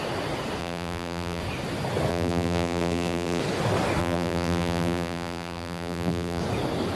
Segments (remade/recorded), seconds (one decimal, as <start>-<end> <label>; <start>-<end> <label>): 0.0-0.6 recorded; 0.6-1.4 remade; 1.4-2.1 recorded; 2.1-3.4 remade; 3.4-4.0 recorded; 4.0-6.4 remade; 6.4-7.0 recorded